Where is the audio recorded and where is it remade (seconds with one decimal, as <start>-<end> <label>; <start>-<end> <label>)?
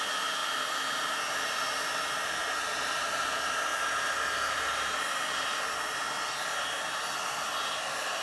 0.0-8.2 recorded